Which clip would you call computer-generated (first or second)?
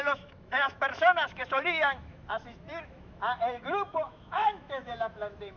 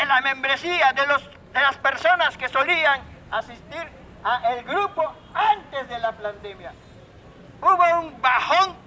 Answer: first